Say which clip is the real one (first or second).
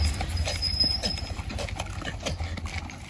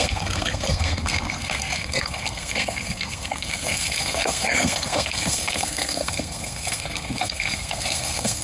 first